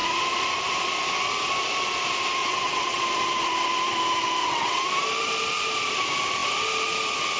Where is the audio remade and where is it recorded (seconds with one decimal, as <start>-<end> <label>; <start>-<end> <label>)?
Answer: 0.0-2.4 recorded; 2.4-3.0 remade; 3.0-4.4 recorded; 4.4-4.9 remade; 4.9-7.4 recorded